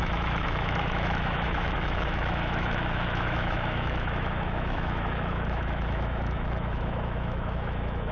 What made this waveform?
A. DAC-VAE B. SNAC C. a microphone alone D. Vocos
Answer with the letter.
A